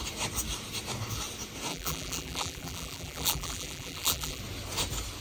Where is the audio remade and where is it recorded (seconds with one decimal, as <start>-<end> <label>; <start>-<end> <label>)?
0.0-1.7 recorded; 1.7-4.4 remade; 4.4-5.2 recorded